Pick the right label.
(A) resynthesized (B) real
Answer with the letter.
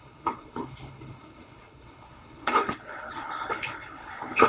A